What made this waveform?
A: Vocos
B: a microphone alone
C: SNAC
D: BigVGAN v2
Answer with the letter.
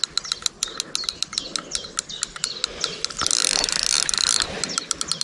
B